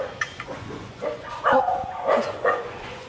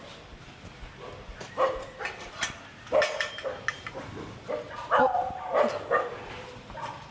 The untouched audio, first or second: second